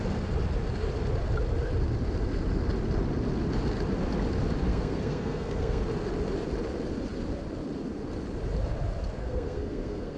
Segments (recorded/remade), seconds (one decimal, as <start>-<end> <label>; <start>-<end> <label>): 0.0-4.7 recorded; 4.7-5.8 remade; 5.8-9.2 recorded; 9.2-10.2 remade